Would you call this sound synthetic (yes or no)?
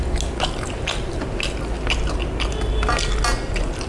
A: no